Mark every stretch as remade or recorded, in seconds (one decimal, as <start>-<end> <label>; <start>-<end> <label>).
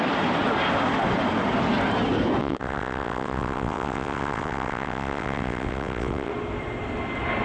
0.0-2.4 recorded; 2.4-6.3 remade; 6.3-7.4 recorded